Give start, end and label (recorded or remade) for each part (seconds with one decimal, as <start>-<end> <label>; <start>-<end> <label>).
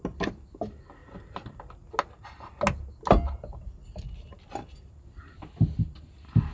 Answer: 0.0-6.5 recorded